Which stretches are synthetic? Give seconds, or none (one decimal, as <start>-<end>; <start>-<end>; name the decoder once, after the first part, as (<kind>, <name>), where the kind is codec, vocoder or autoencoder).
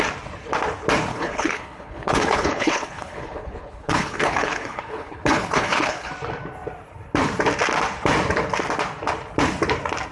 1.1-6.1 (codec, HILCodec)